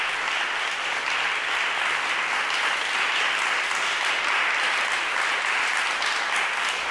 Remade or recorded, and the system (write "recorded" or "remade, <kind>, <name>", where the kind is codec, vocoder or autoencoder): recorded